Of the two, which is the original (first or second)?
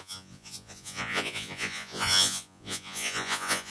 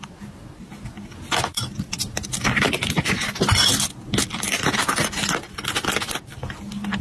second